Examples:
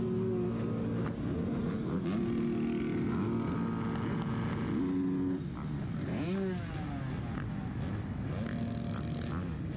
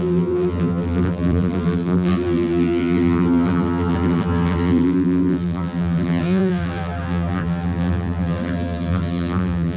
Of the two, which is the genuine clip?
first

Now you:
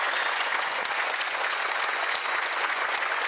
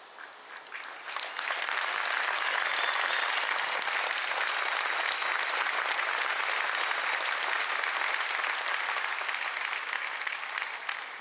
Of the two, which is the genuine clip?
second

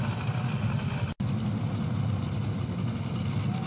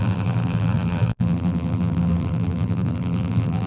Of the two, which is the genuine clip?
first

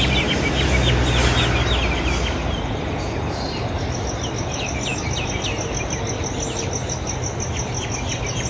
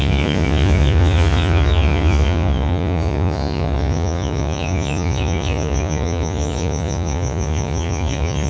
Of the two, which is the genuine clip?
first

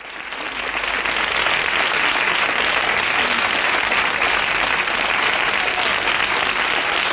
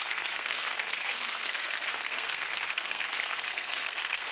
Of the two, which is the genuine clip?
first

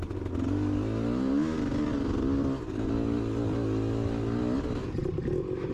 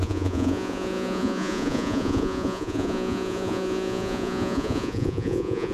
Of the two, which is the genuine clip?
first